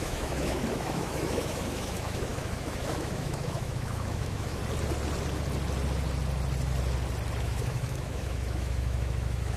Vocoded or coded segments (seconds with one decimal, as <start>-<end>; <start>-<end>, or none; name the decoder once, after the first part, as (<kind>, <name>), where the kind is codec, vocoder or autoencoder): 0.0-4.6 (autoencoder, DAC-VAE); 7.4-9.6

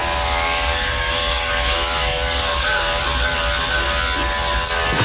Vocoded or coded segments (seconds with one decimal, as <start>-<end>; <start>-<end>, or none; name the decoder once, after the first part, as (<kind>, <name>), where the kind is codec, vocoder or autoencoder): 0.0-3.0 (codec, DAC)

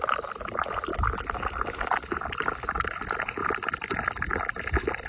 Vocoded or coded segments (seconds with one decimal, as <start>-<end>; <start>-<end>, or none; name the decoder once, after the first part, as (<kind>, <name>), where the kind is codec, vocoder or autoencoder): none

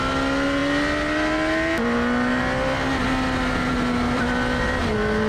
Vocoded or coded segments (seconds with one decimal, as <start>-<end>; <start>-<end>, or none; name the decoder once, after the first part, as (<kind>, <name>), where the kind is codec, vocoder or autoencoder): none

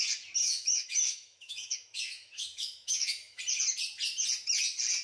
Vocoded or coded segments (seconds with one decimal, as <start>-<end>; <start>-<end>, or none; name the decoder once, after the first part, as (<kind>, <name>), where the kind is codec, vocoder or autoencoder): 0.4-3.4 (autoencoder, DAC-VAE)

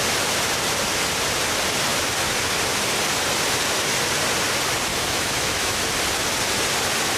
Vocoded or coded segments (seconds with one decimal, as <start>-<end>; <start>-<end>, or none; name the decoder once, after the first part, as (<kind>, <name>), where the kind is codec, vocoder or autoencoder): 4.9-5.8 (autoencoder, DAC-VAE)

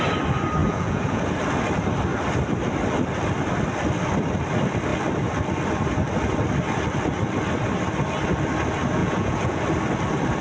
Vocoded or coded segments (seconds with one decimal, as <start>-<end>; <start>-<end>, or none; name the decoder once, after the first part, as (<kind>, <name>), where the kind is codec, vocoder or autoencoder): 0.6-1.2 (vocoder, Vocos); 9.0-9.6

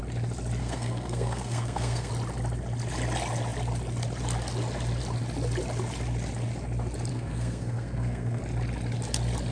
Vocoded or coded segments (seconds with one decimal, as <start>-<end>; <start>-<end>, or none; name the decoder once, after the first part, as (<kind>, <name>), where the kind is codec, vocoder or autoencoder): 0.6-2.1 (codec, SNAC); 7.1-8.4